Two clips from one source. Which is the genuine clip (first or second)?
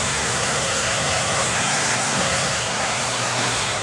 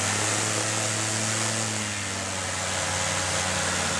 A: second